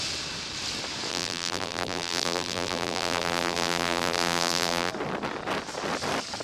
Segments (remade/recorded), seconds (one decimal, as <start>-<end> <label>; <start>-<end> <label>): 0.0-1.1 recorded; 1.1-4.9 remade; 4.9-6.4 recorded